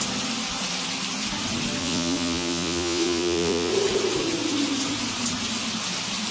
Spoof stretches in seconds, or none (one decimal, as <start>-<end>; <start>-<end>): 1.8-3.7